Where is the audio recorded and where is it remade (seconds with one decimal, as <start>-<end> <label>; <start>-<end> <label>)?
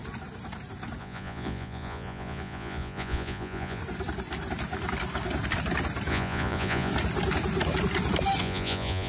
0.0-1.0 recorded; 1.0-3.8 remade; 3.8-6.1 recorded; 6.1-6.9 remade; 6.9-8.4 recorded; 8.4-9.1 remade